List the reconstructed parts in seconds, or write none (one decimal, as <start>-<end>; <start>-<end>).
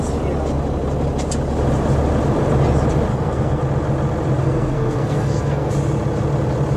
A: 3.1-3.6; 4.4-5.7